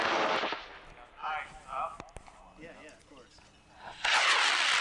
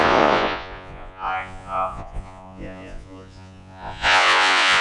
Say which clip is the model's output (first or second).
second